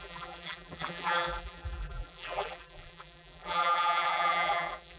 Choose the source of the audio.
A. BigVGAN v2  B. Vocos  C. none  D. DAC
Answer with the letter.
A